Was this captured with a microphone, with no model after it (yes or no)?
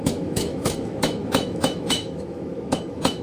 no